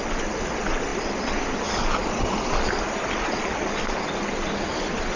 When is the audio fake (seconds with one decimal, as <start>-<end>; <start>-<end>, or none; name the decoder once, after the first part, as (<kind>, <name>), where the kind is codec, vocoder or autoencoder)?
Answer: none